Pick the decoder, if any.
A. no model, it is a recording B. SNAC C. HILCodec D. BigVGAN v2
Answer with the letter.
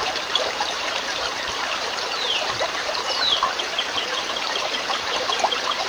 D